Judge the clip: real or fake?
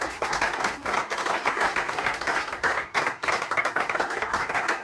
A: fake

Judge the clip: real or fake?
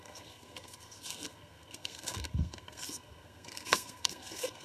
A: fake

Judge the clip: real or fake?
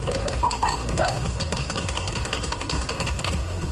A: fake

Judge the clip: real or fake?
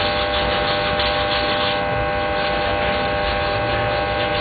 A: real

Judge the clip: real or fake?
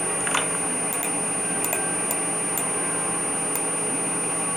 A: real